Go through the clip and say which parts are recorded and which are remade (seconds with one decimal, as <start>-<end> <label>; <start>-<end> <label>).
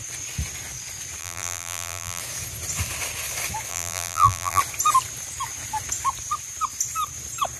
0.0-1.2 recorded; 1.2-2.2 remade; 2.2-3.7 recorded; 3.7-4.6 remade; 4.6-7.6 recorded